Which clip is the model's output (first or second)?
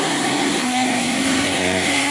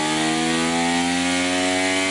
first